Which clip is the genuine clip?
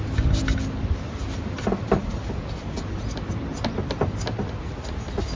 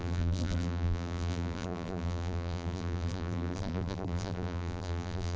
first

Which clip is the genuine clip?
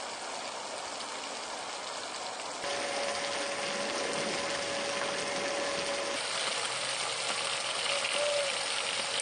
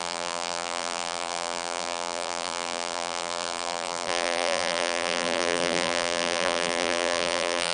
first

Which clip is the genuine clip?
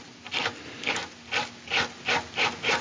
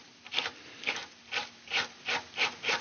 first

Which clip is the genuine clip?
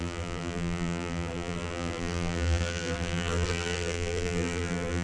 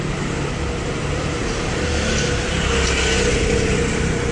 second